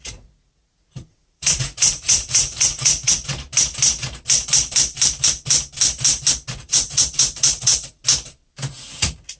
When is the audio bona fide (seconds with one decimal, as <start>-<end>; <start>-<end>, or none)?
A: 3.3-6.5; 8.0-8.7